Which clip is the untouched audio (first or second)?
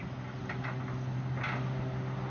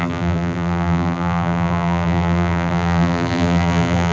first